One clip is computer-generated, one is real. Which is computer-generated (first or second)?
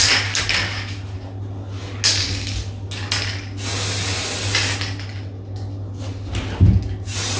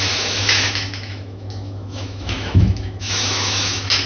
second